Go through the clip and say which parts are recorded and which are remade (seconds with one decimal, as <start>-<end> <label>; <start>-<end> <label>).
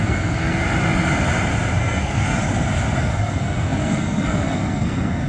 0.0-0.6 remade; 0.6-1.8 recorded; 1.8-2.4 remade; 2.4-3.0 recorded; 3.0-5.3 remade